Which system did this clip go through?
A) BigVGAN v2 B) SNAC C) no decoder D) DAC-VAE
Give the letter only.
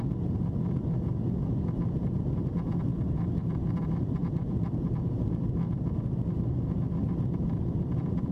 C